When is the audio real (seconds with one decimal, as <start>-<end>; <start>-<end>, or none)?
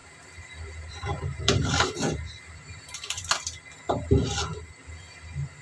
3.3-5.6